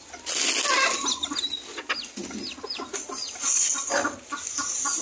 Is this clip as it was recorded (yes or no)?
yes